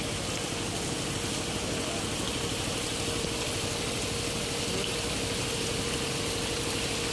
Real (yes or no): yes